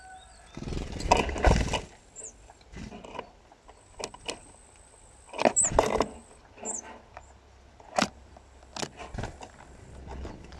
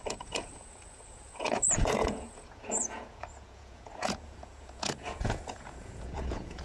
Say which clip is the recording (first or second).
first